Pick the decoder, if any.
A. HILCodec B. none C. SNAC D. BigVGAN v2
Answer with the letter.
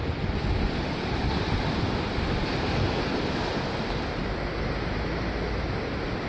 B